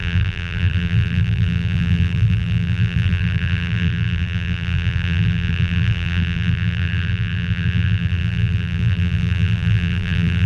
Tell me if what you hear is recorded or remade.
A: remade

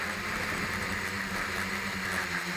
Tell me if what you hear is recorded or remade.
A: remade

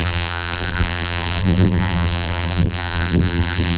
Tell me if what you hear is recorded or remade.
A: remade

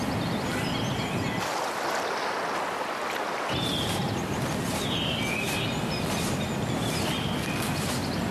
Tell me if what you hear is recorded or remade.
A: recorded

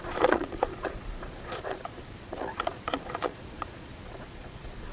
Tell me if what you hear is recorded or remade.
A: remade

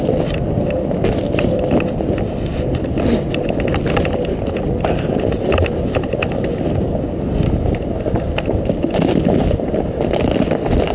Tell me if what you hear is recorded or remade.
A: recorded